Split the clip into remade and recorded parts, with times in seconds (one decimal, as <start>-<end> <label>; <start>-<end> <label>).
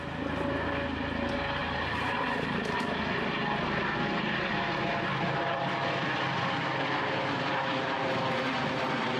0.0-1.6 recorded; 1.6-3.4 remade; 3.4-9.2 recorded